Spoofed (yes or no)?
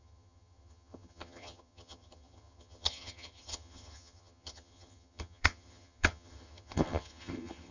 yes